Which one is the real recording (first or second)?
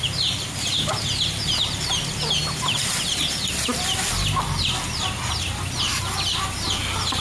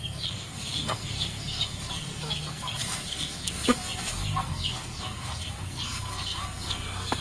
first